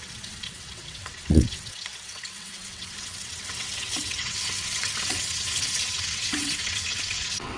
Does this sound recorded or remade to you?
remade